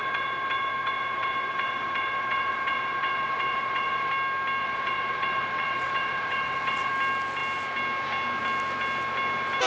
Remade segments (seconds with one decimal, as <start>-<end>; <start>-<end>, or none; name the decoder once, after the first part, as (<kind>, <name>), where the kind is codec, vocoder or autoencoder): 0.0-4.1 (vocoder, WaveNeXt); 4.6-6.9